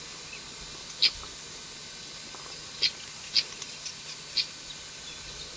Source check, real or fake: real